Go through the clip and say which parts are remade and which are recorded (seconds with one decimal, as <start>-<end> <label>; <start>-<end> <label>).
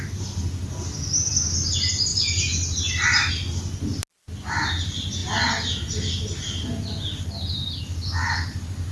0.0-8.9 recorded